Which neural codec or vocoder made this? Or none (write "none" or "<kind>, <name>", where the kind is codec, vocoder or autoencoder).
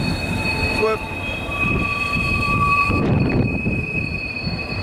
vocoder, BigVGAN v2